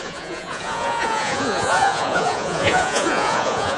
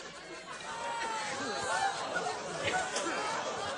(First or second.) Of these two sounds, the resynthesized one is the first